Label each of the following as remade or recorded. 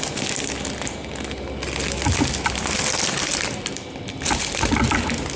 recorded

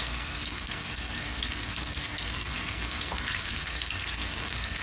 remade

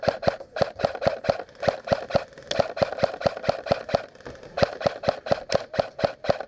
recorded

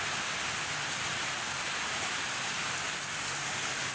recorded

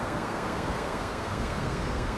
remade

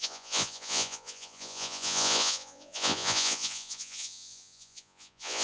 remade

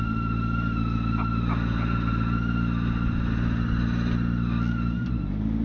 recorded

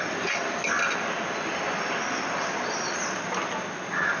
recorded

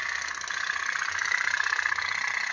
recorded